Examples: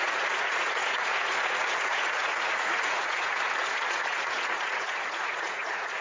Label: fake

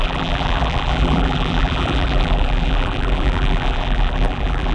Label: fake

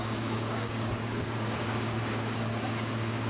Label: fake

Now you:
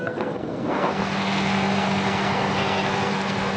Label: fake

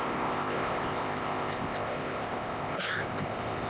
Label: fake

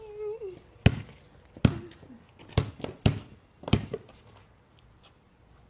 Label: real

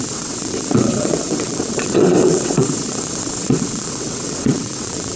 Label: fake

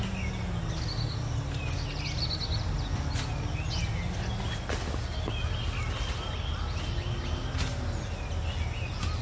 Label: real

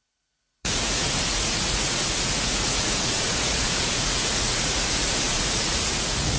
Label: fake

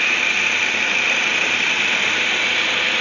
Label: fake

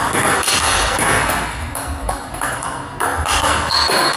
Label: fake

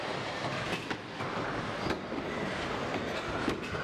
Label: real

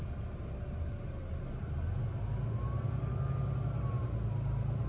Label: real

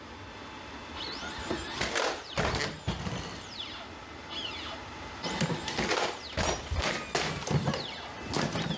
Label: real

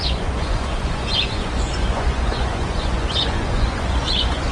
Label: fake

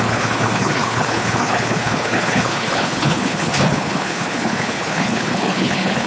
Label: fake